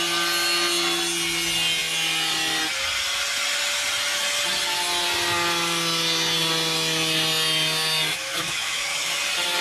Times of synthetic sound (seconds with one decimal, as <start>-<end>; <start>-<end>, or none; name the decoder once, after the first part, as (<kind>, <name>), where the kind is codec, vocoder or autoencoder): 8.1-9.2 (autoencoder, DAC-VAE)